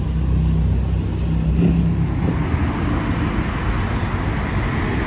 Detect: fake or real real